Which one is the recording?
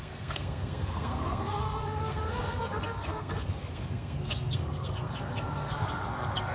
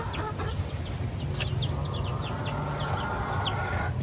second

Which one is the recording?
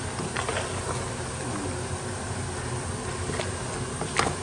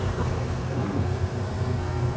first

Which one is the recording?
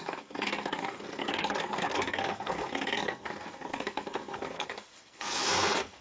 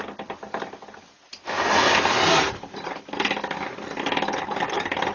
second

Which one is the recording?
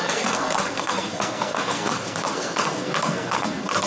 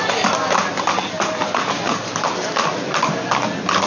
second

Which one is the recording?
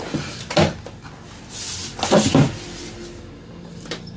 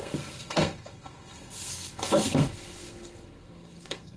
first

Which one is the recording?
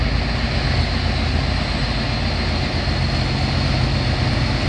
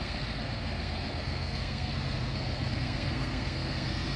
first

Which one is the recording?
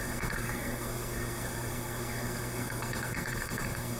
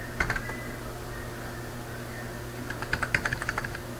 second